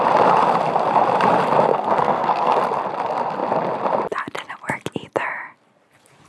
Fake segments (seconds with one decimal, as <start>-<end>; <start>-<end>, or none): 1.7-2.6